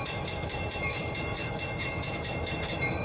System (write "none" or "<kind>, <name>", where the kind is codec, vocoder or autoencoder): autoencoder, DAC-VAE